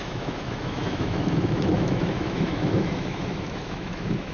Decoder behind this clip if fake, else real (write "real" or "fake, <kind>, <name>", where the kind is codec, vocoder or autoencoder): fake, autoencoder, DAC-VAE